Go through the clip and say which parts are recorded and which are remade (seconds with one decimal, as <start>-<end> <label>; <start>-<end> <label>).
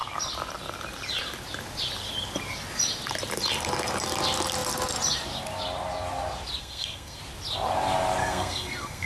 0.0-6.6 recorded; 6.6-7.2 remade; 7.2-8.2 recorded; 8.2-9.1 remade